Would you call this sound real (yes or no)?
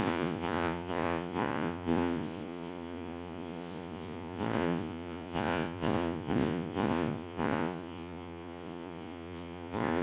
no